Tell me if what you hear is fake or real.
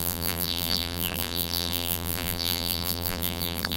fake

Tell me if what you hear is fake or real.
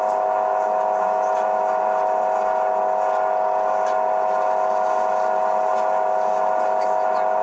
real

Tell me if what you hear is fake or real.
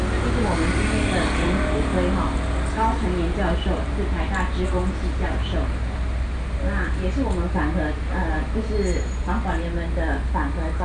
real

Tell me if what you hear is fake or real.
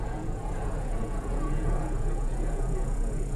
fake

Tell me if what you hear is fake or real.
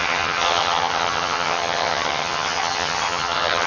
fake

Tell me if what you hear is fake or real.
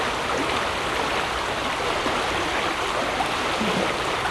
real